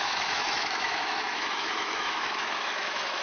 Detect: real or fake fake